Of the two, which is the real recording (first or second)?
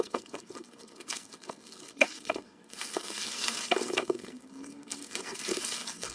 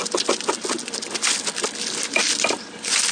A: second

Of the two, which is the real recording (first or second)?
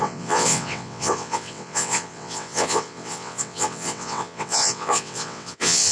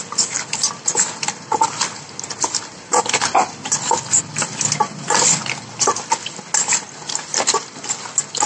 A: second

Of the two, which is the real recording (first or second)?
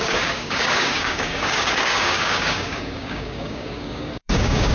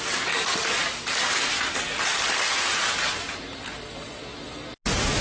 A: second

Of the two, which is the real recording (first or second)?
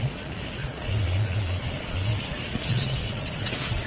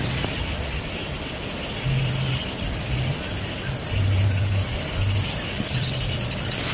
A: second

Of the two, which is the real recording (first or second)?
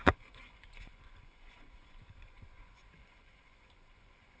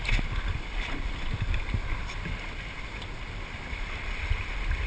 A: second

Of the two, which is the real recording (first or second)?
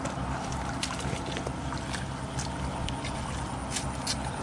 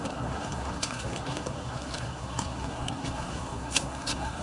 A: first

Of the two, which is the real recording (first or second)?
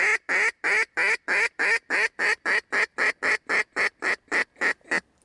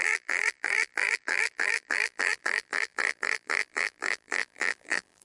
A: first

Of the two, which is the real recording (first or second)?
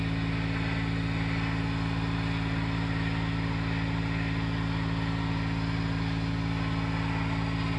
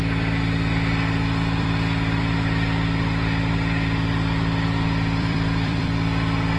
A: first